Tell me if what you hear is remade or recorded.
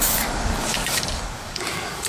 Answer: remade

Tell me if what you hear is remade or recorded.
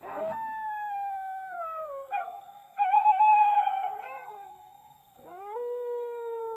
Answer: remade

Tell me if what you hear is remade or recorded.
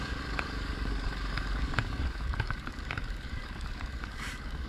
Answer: remade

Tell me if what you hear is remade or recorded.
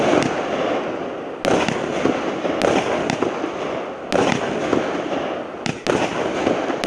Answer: recorded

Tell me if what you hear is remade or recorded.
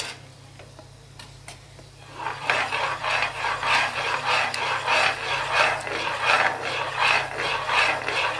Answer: remade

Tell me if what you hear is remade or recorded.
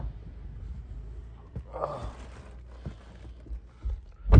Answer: recorded